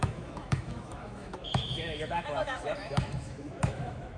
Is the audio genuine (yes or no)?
no